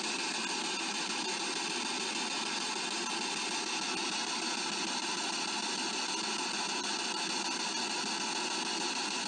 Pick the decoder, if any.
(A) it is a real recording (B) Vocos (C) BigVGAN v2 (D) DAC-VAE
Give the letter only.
A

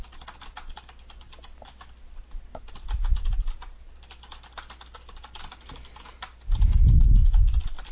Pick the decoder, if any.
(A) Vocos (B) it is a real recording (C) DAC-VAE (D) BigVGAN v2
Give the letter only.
D